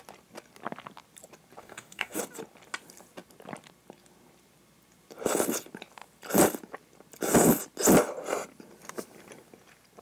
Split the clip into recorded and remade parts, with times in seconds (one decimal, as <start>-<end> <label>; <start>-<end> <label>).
0.0-1.6 recorded; 1.6-2.2 remade; 2.2-10.0 recorded